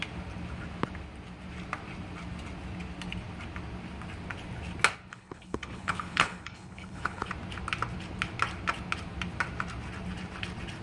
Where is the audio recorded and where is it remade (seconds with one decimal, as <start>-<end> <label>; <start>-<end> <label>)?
0.0-5.1 recorded; 5.1-7.3 remade; 7.3-10.8 recorded